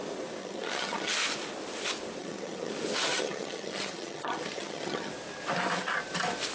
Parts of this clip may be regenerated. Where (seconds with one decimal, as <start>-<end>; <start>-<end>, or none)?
0.4-1.1; 2.2-2.7; 3.1-5.1